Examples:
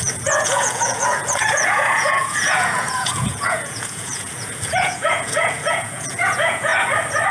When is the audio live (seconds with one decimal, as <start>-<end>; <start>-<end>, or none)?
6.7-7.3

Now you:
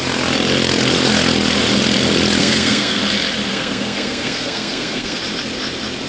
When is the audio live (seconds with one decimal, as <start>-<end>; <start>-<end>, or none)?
0.0-2.4; 3.0-3.5; 5.2-6.1

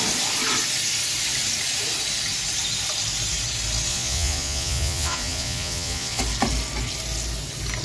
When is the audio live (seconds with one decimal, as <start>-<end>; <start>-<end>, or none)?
0.0-3.9; 6.2-7.8